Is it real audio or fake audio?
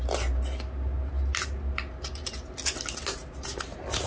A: real